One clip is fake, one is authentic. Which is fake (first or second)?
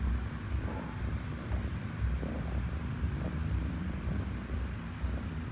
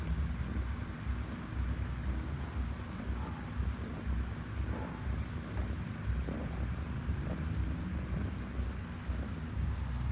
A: first